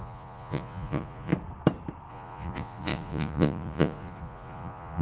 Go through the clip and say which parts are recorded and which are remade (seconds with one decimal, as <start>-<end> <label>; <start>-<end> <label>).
0.0-1.3 remade; 1.3-2.1 recorded; 2.1-5.0 remade